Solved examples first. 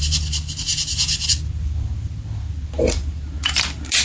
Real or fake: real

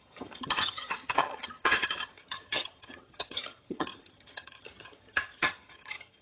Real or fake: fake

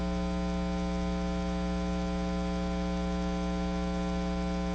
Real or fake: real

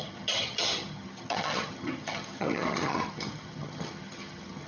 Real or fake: fake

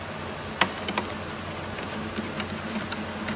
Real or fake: real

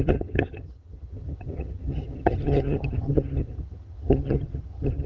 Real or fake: fake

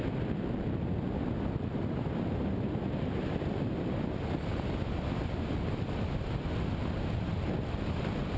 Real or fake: real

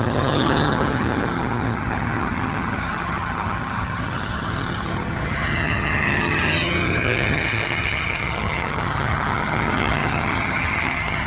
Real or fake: fake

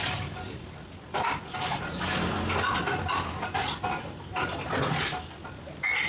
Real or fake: real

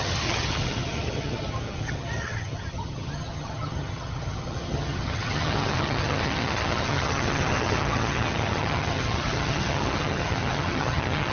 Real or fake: fake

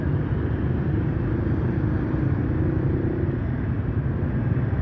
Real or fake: real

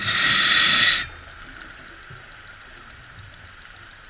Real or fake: real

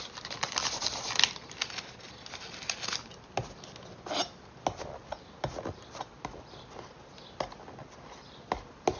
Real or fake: real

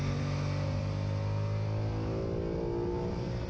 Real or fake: real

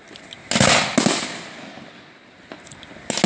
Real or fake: real